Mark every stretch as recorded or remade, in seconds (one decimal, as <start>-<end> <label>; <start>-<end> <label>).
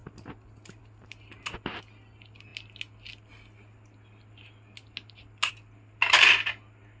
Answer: 0.0-7.0 recorded